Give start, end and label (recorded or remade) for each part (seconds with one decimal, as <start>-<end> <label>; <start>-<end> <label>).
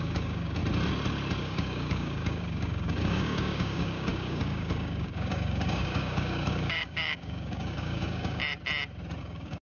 0.0-0.6 remade; 0.6-1.4 recorded; 1.4-8.4 remade; 8.4-9.2 recorded; 9.2-9.8 remade